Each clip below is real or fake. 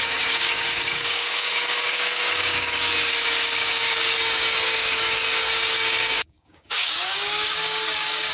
fake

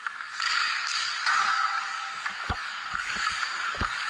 fake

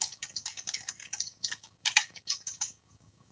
fake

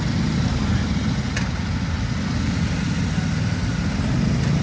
real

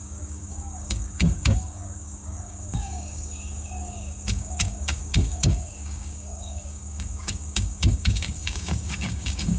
fake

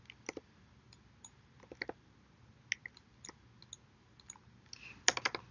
real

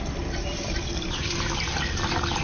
real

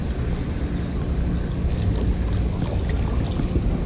real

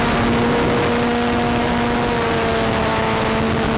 real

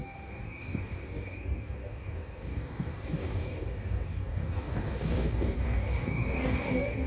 fake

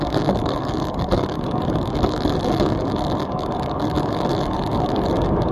fake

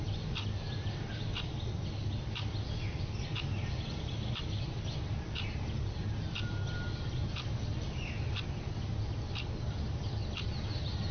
real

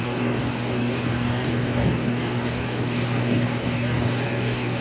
fake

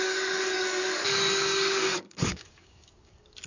fake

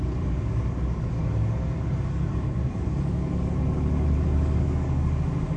fake